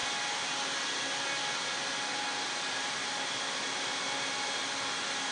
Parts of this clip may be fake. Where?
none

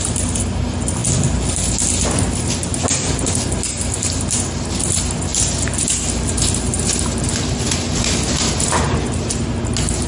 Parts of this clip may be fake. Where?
none

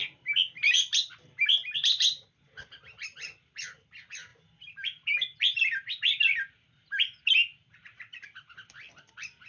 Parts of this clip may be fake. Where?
none

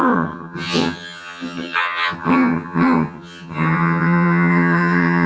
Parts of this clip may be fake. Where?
0.0-5.3 (vocoder, HiFi-GAN)

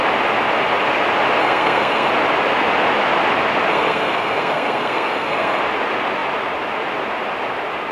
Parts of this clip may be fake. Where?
1.4-2.1 (codec, SNAC); 3.7-5.6

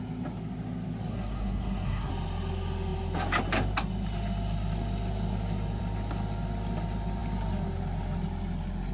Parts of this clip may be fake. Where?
1.1-2.1 (codec, SNAC)